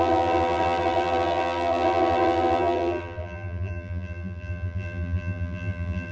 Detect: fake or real fake